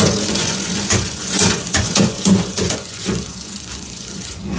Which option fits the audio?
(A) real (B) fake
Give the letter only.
B